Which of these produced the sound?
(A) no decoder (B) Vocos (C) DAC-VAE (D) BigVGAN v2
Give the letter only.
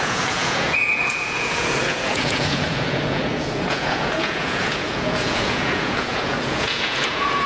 B